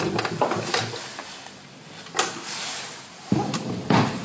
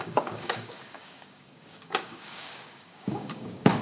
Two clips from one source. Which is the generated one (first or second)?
second